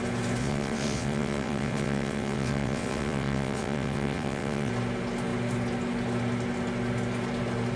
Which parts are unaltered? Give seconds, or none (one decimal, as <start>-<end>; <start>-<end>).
0.0-0.4; 4.7-7.8